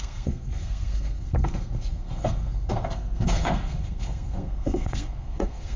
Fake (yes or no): yes